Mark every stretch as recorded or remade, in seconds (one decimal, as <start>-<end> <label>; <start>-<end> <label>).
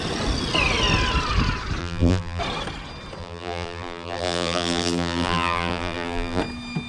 0.0-1.8 recorded; 1.8-2.4 remade; 2.4-3.2 recorded; 3.2-6.4 remade; 6.4-6.9 recorded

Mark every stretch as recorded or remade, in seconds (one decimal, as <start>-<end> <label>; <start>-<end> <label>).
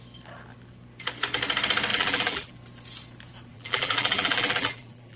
0.0-1.9 recorded; 1.9-2.5 remade; 2.5-3.5 recorded; 3.5-5.2 remade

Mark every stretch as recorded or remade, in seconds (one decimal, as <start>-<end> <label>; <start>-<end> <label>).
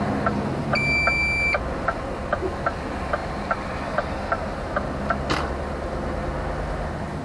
0.0-7.2 recorded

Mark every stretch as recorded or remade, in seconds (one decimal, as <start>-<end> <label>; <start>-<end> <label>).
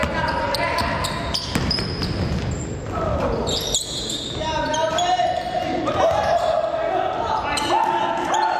0.0-4.8 recorded; 4.8-5.9 remade; 5.9-8.6 recorded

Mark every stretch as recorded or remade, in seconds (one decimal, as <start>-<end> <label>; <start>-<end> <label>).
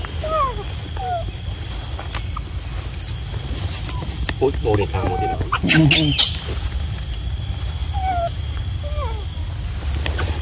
0.0-7.8 recorded; 7.8-8.6 remade; 8.6-10.4 recorded